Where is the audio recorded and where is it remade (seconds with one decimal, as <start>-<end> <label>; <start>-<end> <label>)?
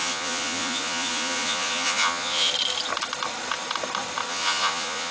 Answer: 0.0-2.5 remade; 2.5-4.3 recorded; 4.3-5.1 remade